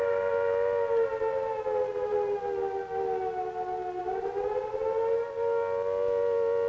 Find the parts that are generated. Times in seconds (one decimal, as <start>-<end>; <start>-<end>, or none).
none